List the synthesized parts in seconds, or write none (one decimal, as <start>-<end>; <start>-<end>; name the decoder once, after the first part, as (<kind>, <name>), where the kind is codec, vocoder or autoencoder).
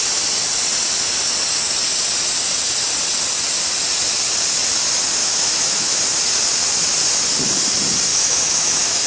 5.2-6.0 (autoencoder, DAC-VAE); 8.1-9.1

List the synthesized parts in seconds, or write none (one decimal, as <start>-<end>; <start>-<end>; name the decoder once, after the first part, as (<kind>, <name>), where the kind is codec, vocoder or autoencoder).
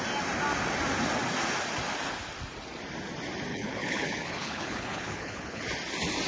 3.5-5.6 (codec, HILCodec)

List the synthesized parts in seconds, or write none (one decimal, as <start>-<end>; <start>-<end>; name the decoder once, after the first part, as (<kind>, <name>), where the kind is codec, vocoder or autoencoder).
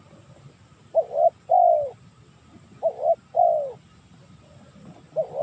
none